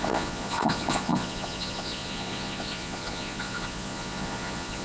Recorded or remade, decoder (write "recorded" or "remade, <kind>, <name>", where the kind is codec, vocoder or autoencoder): remade, vocoder, Vocos